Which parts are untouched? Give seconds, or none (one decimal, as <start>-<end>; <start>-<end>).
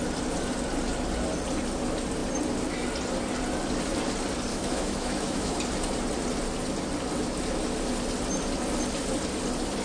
0.0-4.5; 5.6-9.8